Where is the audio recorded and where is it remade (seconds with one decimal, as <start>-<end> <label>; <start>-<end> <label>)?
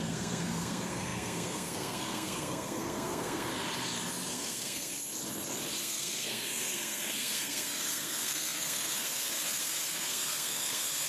0.0-3.5 remade; 3.5-4.3 recorded; 4.3-4.9 remade; 4.9-5.8 recorded; 5.8-11.1 remade